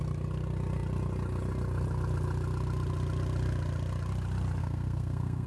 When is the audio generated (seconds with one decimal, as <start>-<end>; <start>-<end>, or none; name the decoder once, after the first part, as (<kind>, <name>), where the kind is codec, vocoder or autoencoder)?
4.6-5.5 (codec, SNAC)